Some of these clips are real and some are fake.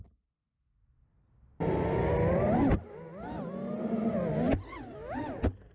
real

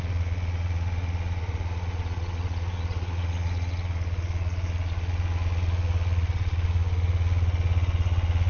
fake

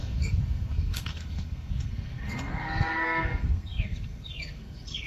fake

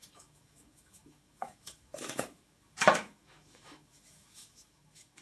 fake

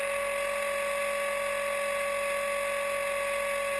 real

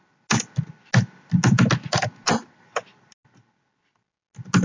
real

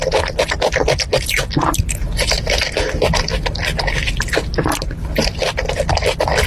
real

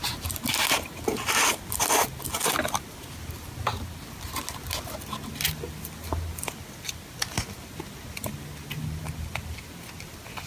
real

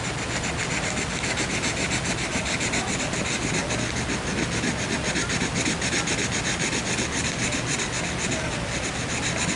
real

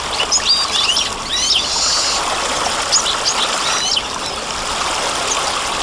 real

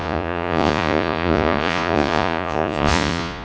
fake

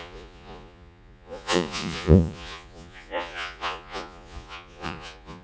fake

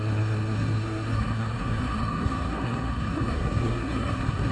fake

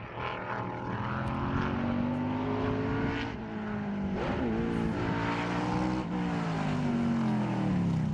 real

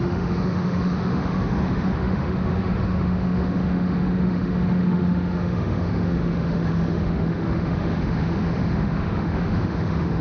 fake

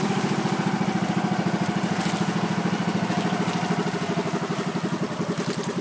real